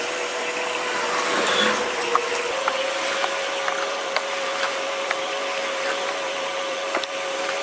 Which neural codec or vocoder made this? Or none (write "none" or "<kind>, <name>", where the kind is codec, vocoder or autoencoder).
vocoder, BigVGAN v2